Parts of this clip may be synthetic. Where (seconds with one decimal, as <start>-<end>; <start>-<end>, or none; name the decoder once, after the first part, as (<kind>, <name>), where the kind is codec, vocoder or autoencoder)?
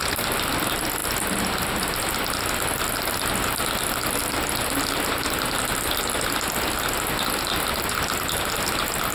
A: none